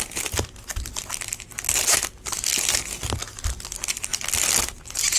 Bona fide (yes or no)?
yes